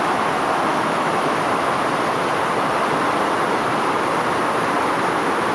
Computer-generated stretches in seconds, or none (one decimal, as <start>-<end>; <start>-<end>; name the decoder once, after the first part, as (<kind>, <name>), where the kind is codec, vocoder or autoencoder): 0.7-1.4 (autoencoder, DAC-VAE)

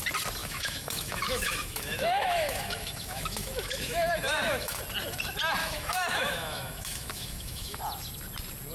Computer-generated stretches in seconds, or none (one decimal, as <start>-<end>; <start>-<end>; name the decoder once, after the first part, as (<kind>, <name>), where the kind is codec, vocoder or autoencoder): 0.4-4.8 (autoencoder, DAC-VAE); 5.6-7.8

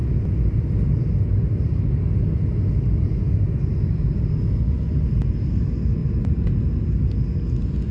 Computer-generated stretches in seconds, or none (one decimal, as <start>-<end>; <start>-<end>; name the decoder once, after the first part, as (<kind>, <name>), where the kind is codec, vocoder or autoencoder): none

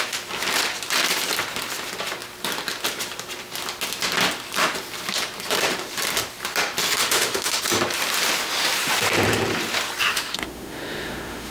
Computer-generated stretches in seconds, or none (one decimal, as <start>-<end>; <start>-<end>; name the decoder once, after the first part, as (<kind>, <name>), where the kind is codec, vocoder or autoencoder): 7.0-7.6 (autoencoder, DAC-VAE); 10.1-11.5